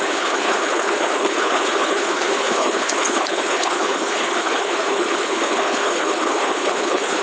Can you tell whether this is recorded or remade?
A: remade